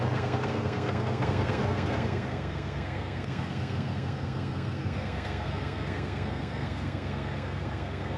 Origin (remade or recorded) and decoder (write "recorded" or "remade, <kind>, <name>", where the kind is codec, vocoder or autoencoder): remade, codec, SNAC